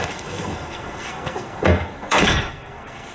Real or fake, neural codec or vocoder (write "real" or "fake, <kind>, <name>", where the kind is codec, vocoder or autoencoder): fake, codec, SNAC